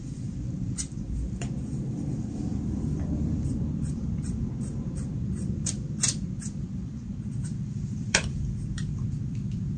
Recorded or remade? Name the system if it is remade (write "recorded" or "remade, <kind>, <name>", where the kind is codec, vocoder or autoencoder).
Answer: remade, vocoder, BigVGAN v2